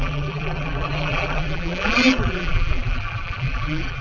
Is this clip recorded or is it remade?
remade